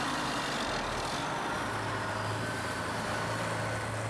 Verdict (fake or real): real